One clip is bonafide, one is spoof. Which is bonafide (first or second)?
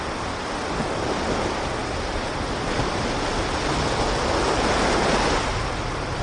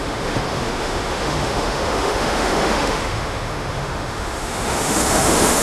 first